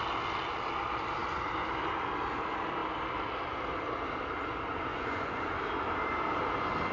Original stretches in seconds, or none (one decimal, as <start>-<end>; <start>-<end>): 0.0-4.9; 5.4-6.9